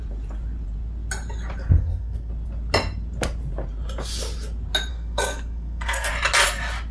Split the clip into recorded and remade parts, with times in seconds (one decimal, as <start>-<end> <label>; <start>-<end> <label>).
0.0-1.8 recorded; 1.8-2.3 remade; 2.3-4.9 recorded; 4.9-6.1 remade; 6.1-6.9 recorded